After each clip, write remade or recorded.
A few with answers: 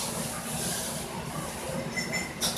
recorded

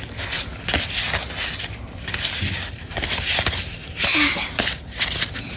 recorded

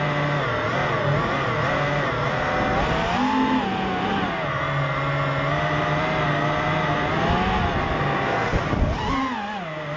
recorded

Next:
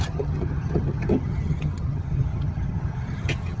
remade